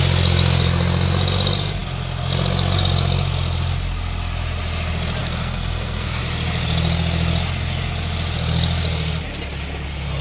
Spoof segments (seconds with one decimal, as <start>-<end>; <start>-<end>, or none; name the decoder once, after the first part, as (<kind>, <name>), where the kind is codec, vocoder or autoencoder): 5.2-6.2 (codec, SNAC)